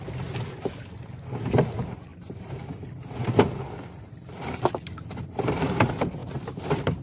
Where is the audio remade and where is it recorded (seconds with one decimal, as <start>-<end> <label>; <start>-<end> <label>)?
0.0-2.1 recorded; 2.1-5.7 remade; 5.7-6.2 recorded; 6.2-7.0 remade